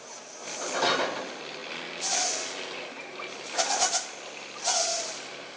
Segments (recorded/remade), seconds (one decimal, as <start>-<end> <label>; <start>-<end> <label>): 0.0-5.6 recorded